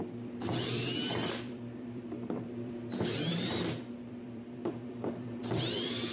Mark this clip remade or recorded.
remade